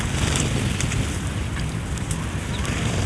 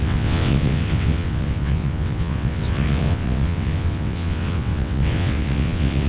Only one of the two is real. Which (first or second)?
first